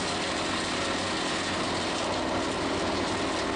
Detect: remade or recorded recorded